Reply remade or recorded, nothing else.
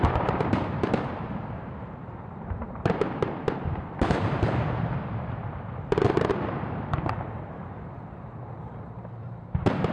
remade